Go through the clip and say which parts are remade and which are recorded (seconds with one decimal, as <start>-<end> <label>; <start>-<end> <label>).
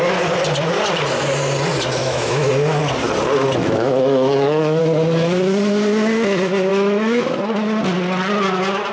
0.0-2.0 recorded; 2.0-2.5 remade; 2.5-3.6 recorded; 3.6-4.8 remade; 4.8-6.7 recorded; 6.7-7.4 remade; 7.4-8.9 recorded